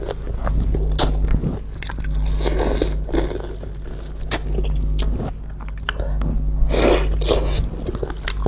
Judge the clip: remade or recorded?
recorded